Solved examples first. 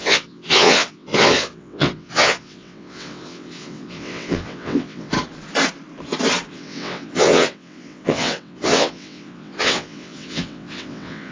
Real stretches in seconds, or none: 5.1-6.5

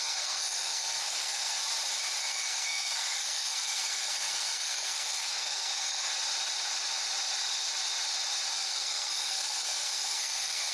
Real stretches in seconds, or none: 1.6-2.2; 6.1-8.5

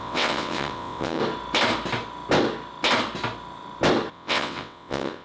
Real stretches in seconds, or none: 1.2-4.1

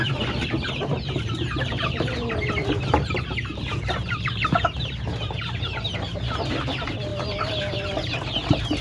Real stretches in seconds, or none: none

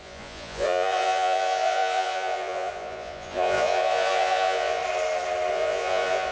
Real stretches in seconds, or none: 4.8-5.5

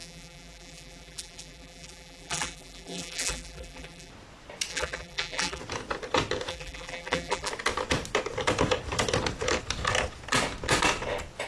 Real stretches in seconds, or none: 4.1-4.7; 5.6-6.5; 7.5-11.5

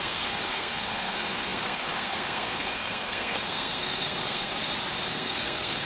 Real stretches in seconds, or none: 4.5-5.1

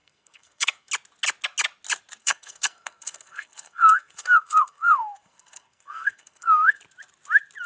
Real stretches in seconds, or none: 0.9-2.2; 6.8-7.7